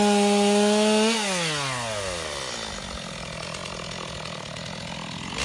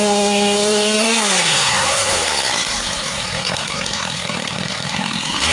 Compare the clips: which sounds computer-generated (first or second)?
second